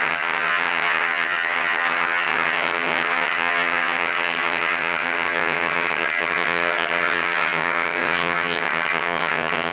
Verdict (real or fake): fake